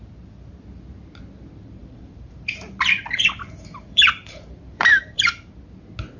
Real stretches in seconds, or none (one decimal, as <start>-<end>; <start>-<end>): 0.0-1.8; 5.5-6.2